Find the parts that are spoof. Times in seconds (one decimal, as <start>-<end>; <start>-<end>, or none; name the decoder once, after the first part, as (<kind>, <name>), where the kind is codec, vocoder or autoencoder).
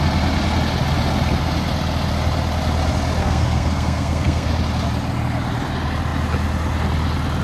3.2-4.5 (codec, SNAC)